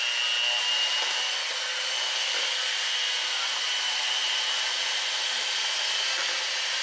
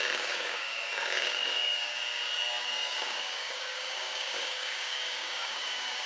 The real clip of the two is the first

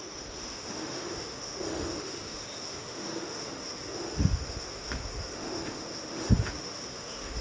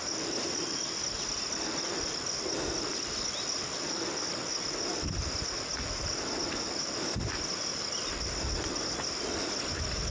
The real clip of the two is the second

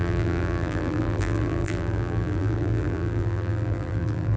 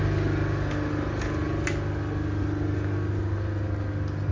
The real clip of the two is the second